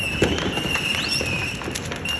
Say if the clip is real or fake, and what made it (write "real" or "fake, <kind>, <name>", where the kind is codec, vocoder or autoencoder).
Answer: fake, vocoder, BigVGAN v2